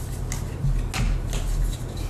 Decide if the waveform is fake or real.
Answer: real